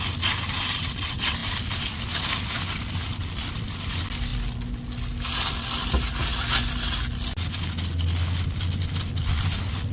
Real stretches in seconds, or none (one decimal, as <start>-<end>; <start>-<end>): 0.0-9.9